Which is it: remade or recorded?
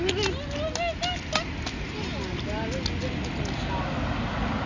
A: recorded